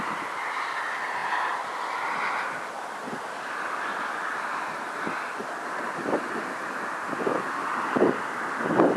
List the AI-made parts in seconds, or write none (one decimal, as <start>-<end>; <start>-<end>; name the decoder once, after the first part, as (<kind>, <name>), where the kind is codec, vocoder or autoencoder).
1.2-4.2 (vocoder, BigVGAN v2); 5.4-6.4